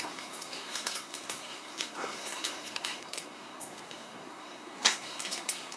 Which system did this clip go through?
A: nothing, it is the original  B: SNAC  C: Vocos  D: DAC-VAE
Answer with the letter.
B